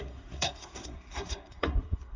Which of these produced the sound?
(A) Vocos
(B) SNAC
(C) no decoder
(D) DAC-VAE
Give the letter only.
B